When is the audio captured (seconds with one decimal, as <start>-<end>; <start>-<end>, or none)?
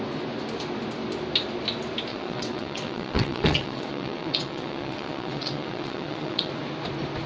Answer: 0.0-2.1; 6.5-7.3